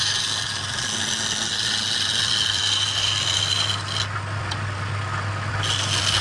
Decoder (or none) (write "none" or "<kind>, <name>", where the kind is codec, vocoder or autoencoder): none